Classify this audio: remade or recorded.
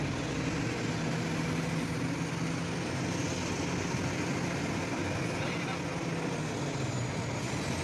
recorded